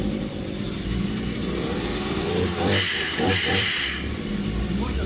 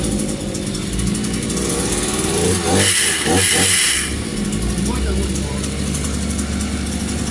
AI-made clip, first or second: first